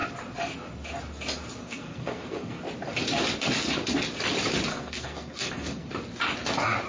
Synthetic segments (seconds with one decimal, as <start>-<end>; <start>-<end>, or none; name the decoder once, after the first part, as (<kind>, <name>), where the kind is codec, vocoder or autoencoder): 1.6-2.6 (codec, SNAC); 4.7-5.9